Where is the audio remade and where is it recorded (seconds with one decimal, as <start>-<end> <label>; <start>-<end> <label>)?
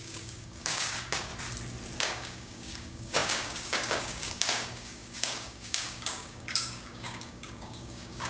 0.0-1.3 remade; 1.3-2.0 recorded; 2.0-8.3 remade